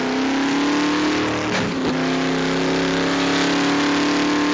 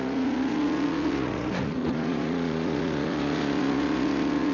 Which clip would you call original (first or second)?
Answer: first